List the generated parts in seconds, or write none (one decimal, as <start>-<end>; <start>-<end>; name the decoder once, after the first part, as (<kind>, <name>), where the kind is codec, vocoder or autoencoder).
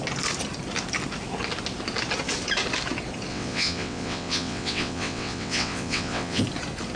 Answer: 3.3-6.4 (vocoder, WaveNeXt)